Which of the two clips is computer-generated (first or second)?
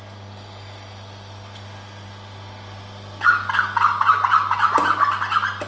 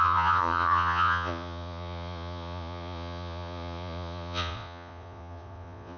second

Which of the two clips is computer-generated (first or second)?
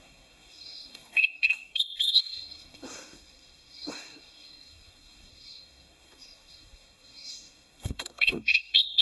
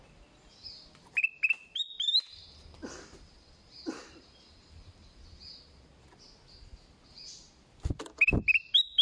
first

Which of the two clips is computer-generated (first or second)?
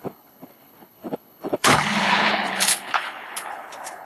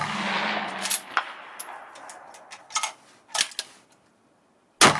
first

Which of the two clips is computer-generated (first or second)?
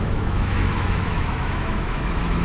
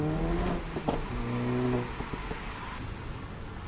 first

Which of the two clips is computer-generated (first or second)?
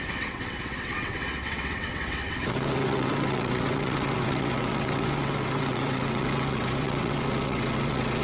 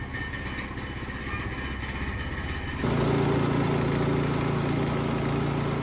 first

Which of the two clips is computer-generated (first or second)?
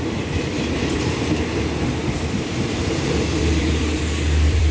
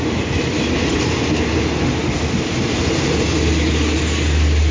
first